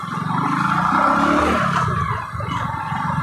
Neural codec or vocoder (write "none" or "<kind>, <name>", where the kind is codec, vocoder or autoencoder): none